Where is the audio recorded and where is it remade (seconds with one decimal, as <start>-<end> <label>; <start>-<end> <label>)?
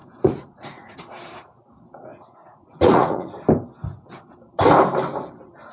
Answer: 0.0-1.0 remade; 1.0-2.1 recorded; 2.1-3.3 remade; 3.3-5.7 recorded